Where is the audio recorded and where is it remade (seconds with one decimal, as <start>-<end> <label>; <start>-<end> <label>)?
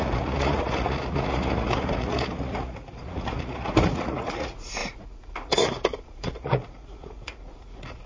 0.0-8.1 remade